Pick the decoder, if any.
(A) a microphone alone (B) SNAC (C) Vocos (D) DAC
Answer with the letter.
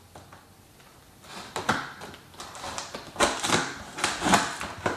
A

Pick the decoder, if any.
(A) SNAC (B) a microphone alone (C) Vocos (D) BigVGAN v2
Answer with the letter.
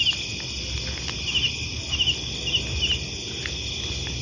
B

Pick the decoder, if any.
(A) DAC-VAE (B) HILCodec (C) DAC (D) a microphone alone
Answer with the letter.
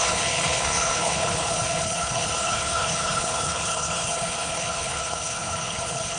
B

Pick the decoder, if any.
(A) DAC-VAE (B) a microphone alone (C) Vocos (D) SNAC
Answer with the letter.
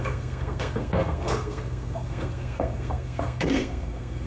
D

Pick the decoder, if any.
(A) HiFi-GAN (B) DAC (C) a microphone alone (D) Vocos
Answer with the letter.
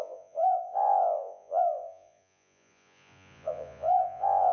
D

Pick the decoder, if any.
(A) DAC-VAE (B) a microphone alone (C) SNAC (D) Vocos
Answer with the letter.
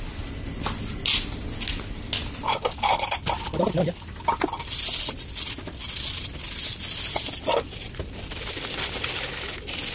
B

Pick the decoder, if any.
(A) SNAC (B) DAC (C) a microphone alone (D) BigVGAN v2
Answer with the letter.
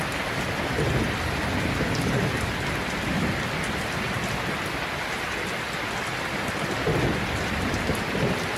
C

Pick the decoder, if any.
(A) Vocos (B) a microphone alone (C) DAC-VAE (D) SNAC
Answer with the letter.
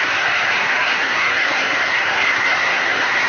D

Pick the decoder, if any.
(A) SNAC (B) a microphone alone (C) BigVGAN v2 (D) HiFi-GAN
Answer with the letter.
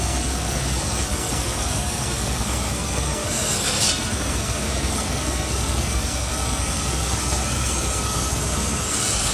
A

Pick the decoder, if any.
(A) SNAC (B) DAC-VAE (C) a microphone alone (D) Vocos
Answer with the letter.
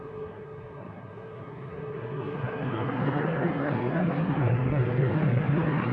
A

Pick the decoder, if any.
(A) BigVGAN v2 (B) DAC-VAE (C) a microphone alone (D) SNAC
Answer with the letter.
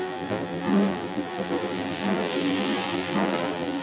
A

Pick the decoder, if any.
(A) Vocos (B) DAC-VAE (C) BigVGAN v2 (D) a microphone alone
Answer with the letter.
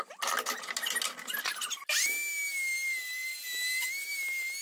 D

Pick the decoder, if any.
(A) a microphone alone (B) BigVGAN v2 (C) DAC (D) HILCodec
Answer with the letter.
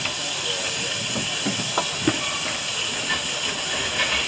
A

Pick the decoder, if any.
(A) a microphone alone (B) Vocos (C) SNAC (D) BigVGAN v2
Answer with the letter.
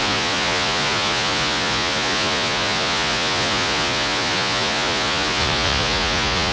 B